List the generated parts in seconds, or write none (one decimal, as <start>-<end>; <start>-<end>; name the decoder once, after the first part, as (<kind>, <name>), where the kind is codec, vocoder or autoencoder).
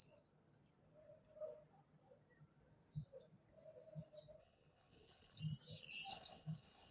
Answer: 4.4-5.4 (codec, HILCodec); 6.1-6.9